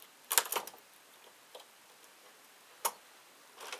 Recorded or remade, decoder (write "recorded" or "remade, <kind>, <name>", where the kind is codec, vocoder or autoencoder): recorded